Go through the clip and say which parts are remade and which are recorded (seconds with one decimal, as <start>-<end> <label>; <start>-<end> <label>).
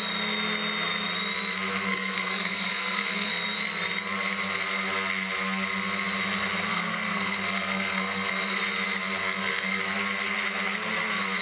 0.0-1.7 recorded; 1.7-3.3 remade; 3.3-6.7 recorded; 6.7-8.6 remade; 8.6-9.2 recorded; 9.2-9.8 remade; 9.8-11.4 recorded